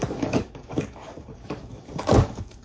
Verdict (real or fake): fake